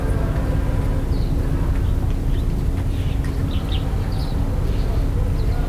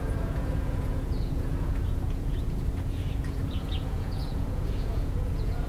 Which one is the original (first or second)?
first